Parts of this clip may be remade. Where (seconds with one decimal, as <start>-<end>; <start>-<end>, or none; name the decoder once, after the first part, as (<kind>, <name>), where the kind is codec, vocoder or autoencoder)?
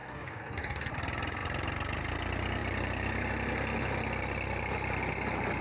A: 0.0-0.9 (codec, DAC)